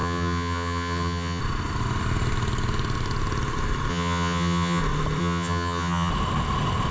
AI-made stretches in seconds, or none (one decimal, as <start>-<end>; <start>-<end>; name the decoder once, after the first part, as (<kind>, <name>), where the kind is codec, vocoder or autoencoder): 0.0-1.4 (vocoder, HiFi-GAN); 3.9-4.8; 5.2-6.1